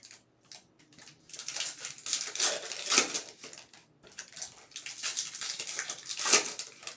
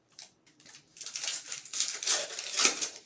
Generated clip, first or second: second